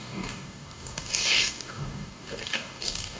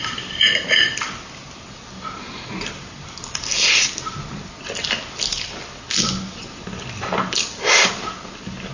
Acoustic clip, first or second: second